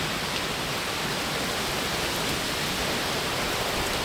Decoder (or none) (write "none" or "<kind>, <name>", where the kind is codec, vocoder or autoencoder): none